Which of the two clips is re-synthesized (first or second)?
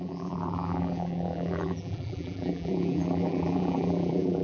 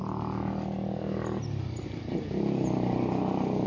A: first